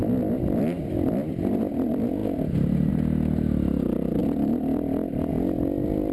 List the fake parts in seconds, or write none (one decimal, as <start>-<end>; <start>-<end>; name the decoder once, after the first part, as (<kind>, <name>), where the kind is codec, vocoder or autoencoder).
2.2-2.9 (vocoder, BigVGAN v2)